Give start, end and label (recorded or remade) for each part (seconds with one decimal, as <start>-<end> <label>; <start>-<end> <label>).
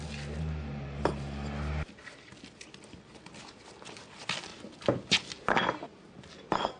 0.0-6.8 recorded